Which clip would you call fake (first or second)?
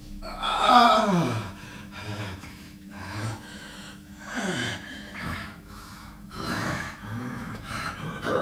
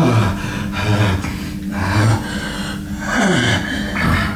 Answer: first